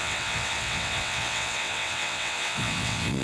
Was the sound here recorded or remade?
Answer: remade